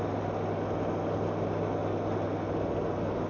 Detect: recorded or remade recorded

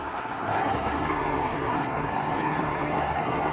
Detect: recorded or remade remade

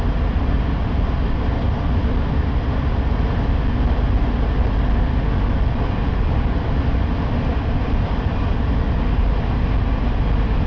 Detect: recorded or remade recorded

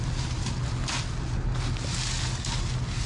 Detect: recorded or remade recorded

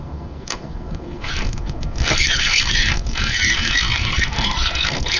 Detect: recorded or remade remade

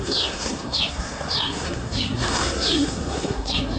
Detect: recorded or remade remade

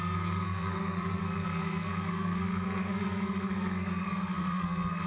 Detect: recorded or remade remade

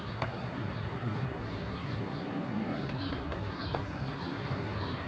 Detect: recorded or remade remade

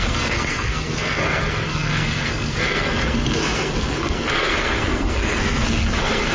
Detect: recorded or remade remade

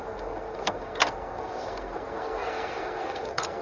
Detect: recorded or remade remade